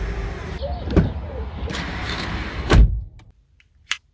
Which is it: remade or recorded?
remade